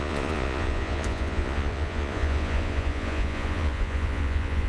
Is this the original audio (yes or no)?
no